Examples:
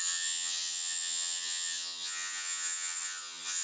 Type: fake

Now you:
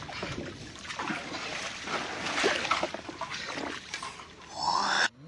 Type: real